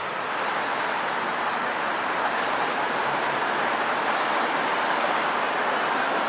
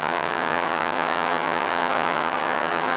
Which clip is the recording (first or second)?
first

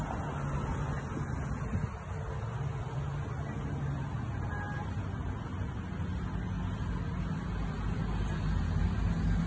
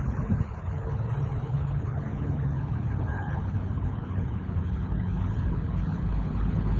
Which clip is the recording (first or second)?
first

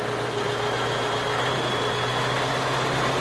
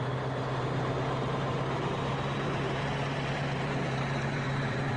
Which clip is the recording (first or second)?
first